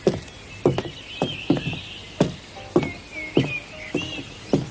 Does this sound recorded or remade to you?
recorded